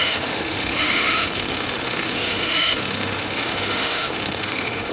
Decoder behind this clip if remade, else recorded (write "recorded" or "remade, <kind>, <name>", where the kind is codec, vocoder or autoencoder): remade, autoencoder, DAC-VAE